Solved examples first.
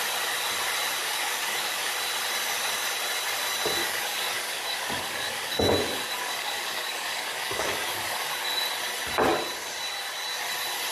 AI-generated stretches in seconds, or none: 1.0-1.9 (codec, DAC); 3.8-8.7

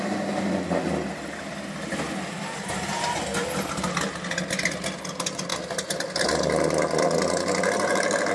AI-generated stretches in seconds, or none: none